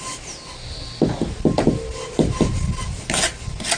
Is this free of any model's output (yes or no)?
yes